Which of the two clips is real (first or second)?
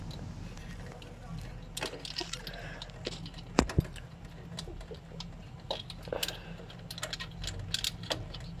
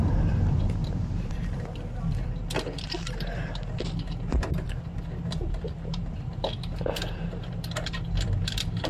first